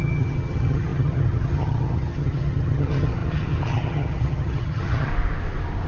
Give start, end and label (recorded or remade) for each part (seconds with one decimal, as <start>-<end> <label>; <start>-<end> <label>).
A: 0.0-5.1 remade; 5.1-5.9 recorded